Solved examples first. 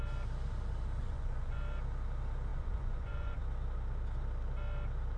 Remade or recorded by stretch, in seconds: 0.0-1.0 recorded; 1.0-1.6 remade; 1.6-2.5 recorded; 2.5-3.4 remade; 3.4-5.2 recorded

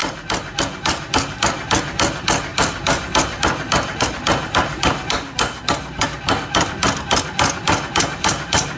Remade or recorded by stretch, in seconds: 0.0-8.8 recorded

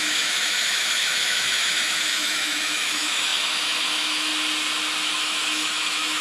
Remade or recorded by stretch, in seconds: 0.0-4.3 remade; 4.3-5.0 recorded; 5.0-6.2 remade

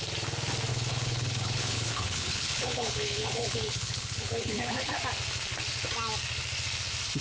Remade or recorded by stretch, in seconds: 0.0-0.7 recorded; 0.7-5.0 remade; 5.0-7.2 recorded

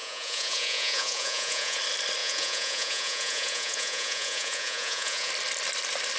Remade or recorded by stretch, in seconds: 0.0-1.8 remade; 1.8-2.2 recorded; 2.2-5.3 remade; 5.3-6.2 recorded

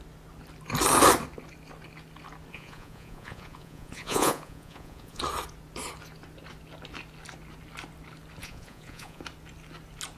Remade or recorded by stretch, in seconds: 0.0-2.5 recorded; 2.5-5.2 remade; 5.2-8.4 recorded; 8.4-9.2 remade; 9.2-10.2 recorded